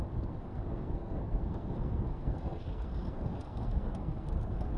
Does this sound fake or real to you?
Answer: fake